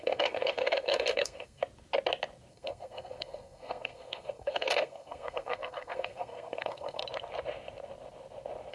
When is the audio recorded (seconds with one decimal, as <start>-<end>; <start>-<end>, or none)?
1.6-2.5; 7.0-8.7